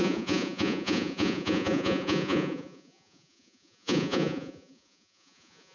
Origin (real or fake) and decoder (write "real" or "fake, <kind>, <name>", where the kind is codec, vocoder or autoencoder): fake, vocoder, Vocos